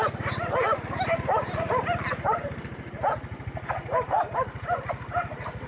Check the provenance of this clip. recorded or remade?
recorded